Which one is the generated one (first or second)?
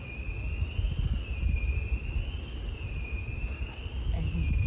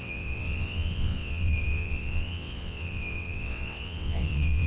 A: second